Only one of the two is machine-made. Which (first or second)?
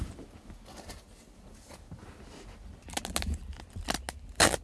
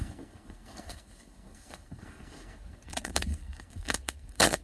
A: second